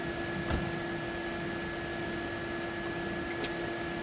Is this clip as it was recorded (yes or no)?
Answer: yes